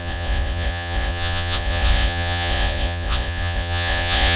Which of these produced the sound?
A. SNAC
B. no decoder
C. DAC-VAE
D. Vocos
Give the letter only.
D